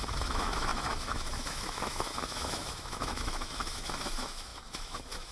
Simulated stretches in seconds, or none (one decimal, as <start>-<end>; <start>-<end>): 0.0-5.3